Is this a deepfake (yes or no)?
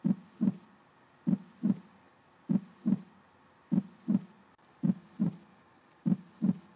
no